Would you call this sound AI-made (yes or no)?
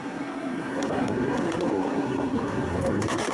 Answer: yes